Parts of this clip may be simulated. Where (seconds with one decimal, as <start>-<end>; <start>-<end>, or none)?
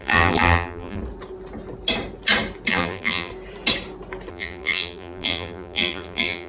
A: 0.0-1.0; 2.7-3.3; 4.3-6.5